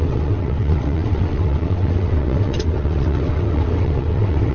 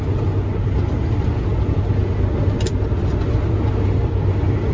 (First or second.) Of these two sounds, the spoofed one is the first